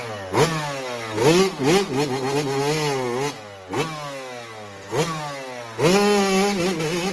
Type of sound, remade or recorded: recorded